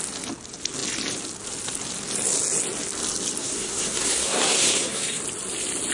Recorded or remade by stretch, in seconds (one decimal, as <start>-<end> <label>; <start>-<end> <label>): 0.0-3.4 recorded; 3.4-5.2 remade; 5.2-5.9 recorded